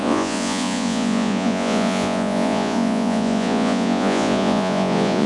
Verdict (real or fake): fake